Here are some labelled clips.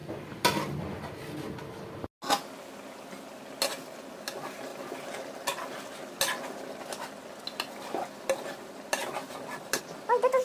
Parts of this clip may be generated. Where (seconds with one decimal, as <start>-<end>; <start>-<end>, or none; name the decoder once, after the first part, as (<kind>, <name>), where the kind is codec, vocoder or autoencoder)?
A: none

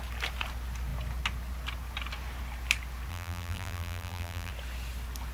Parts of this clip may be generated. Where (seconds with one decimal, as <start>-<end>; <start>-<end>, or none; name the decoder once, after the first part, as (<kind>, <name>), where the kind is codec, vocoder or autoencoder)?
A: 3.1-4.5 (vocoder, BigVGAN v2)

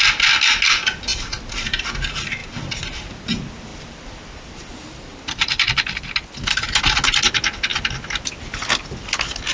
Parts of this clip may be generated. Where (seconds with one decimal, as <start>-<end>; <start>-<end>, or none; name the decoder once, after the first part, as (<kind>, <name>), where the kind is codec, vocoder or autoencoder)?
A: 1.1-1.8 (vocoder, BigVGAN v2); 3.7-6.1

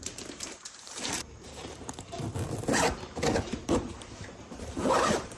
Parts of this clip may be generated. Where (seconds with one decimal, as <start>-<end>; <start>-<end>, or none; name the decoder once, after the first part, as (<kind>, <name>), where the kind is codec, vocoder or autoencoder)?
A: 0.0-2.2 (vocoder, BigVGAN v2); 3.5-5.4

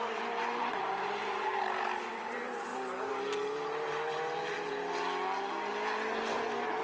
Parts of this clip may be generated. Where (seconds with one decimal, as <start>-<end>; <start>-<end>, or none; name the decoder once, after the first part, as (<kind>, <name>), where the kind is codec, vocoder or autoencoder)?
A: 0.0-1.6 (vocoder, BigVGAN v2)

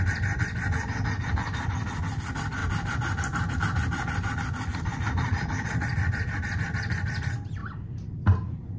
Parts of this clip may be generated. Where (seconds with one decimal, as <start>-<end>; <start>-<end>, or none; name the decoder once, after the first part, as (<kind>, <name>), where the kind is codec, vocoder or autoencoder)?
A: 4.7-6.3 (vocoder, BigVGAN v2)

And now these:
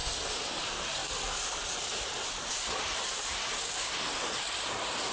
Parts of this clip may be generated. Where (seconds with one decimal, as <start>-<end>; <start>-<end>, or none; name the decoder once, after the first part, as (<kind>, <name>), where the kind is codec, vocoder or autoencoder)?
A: 1.0-4.0 (vocoder, BigVGAN v2)